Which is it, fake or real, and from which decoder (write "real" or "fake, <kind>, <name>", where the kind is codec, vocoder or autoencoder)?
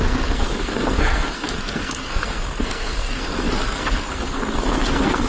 fake, codec, SNAC